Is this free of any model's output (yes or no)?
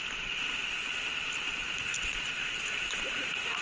yes